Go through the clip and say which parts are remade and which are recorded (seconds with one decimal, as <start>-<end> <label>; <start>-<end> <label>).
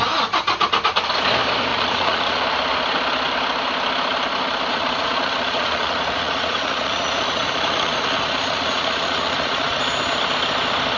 0.0-1.7 recorded; 1.7-2.4 remade; 2.4-4.7 recorded; 4.7-9.8 remade; 9.8-11.0 recorded